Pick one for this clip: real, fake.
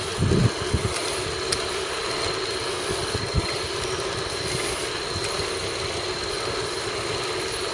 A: real